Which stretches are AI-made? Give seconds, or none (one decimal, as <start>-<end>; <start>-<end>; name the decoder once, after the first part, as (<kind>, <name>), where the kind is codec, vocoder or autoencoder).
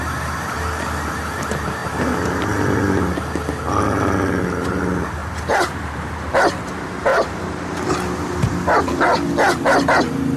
5.2-6.1 (vocoder, BigVGAN v2); 7.1-7.8